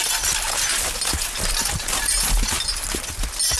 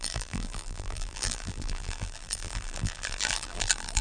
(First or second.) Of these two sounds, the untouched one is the first